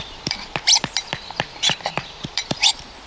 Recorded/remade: remade